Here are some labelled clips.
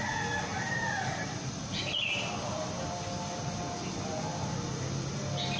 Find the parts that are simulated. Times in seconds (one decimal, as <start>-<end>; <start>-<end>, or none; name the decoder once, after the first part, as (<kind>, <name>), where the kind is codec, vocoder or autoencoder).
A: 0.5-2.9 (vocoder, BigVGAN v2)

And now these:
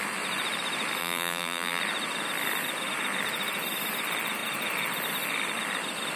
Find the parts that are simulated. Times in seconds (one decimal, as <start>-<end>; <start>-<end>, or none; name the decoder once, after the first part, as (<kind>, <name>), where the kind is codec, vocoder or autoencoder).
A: 1.0-1.8 (vocoder, BigVGAN v2)

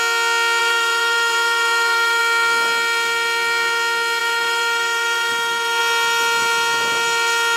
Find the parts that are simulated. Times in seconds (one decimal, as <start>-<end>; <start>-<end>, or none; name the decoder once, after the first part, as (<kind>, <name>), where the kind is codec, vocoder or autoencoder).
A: 0.6-2.2 (vocoder, BigVGAN v2); 4.2-5.8